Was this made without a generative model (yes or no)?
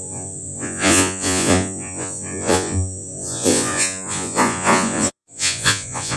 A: no